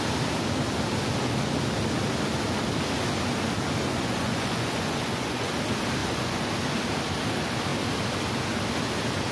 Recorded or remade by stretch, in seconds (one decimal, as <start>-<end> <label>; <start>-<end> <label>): 0.0-3.9 recorded; 3.9-5.5 remade; 5.5-6.0 recorded; 6.0-6.5 remade; 6.5-9.3 recorded